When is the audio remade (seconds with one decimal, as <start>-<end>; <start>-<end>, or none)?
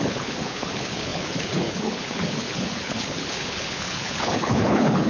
0.0-5.1